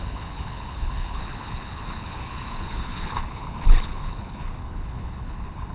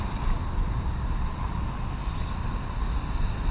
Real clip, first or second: second